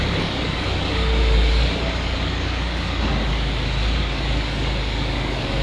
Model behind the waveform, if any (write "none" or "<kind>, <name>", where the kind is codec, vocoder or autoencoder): codec, DAC